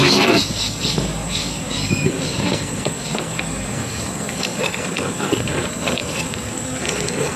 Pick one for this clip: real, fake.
fake